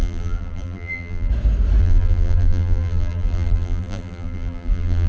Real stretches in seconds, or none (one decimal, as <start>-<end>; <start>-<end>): 1.3-1.8